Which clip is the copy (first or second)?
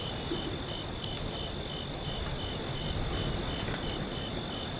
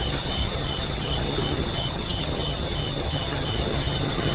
second